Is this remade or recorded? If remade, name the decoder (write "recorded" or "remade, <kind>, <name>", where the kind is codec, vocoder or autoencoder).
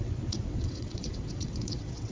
remade, vocoder, WaveNeXt